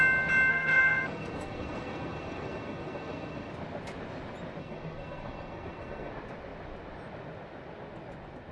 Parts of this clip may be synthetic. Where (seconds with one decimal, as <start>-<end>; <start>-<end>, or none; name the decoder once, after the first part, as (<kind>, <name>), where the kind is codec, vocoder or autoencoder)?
0.5-3.5 (codec, SNAC); 4.6-6.1